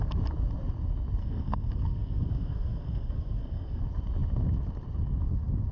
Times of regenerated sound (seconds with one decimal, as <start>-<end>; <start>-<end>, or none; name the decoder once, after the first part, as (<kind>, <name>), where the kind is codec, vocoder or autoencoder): 1.2-3.8 (codec, SNAC)